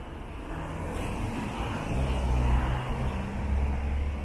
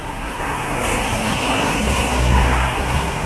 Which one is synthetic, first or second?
second